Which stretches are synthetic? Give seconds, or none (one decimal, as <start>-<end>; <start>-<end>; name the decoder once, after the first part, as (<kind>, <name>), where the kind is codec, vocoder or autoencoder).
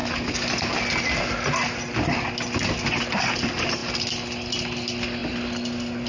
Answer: none